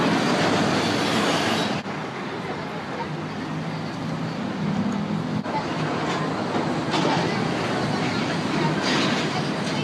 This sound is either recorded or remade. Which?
recorded